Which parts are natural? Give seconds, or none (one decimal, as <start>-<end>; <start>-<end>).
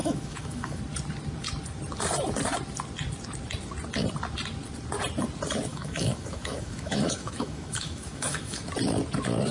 0.8-5.7; 8.6-9.5